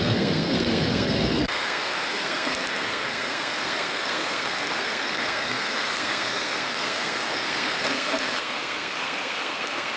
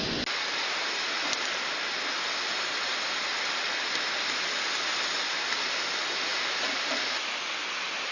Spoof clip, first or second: first